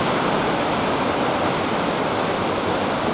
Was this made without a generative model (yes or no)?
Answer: yes